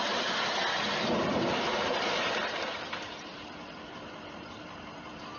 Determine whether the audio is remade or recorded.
remade